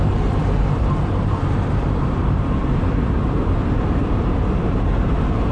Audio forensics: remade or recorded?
remade